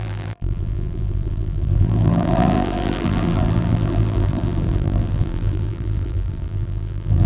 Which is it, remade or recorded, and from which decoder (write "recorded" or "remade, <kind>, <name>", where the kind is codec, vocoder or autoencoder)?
remade, vocoder, BigVGAN v2